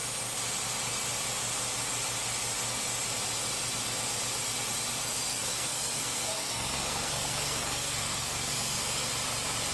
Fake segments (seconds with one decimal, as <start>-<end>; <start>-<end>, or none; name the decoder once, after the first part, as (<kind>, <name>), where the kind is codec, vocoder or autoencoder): 5.3-9.1 (codec, SNAC)